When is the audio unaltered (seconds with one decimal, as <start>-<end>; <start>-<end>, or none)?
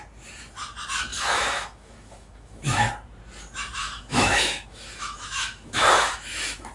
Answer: 0.0-1.1; 2.9-3.8